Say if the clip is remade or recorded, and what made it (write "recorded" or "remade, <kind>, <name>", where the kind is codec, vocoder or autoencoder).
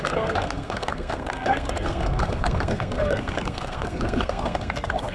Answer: remade, codec, SNAC